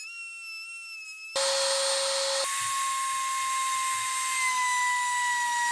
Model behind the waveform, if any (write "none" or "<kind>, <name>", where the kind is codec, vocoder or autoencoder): none